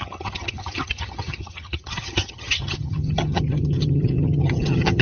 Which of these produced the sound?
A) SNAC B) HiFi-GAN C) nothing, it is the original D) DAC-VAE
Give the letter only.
B